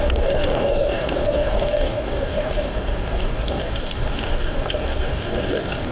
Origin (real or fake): fake